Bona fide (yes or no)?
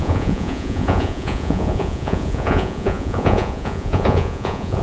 no